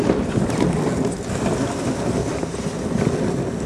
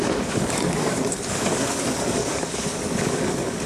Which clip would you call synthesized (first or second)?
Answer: second